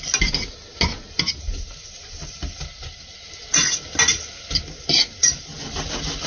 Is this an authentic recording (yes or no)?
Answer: yes